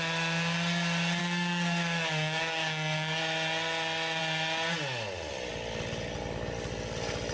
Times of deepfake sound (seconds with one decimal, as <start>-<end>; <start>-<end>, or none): 1.2-3.2